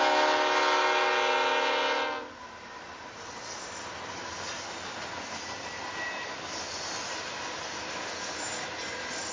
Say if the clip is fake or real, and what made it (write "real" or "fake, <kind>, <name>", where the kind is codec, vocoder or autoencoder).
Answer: real